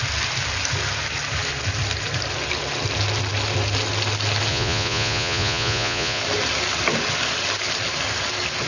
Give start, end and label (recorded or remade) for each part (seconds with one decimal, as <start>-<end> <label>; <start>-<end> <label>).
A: 0.0-4.5 recorded; 4.5-6.2 remade; 6.2-8.7 recorded

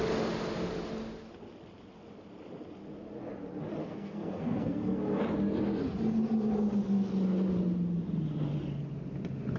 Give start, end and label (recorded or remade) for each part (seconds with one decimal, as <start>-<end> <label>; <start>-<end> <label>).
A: 0.0-3.8 recorded; 3.8-5.2 remade; 5.2-9.6 recorded